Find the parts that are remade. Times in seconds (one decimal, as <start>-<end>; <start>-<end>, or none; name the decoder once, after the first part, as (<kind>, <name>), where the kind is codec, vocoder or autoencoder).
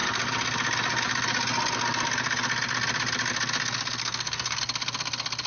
4.0-4.6 (codec, SNAC)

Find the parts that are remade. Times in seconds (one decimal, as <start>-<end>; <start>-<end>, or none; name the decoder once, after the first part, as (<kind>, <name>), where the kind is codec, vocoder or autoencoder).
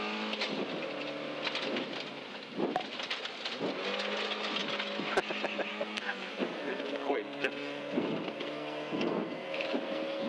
5.7-10.3 (codec, SNAC)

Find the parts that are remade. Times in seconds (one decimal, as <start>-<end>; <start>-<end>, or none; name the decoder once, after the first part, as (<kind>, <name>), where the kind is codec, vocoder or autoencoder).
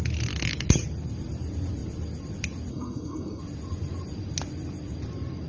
2.7-3.4 (codec, SNAC)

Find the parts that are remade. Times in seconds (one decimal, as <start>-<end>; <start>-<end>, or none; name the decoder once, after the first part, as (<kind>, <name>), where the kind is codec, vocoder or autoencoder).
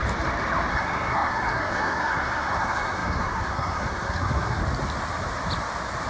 0.7-4.6 (codec, SNAC)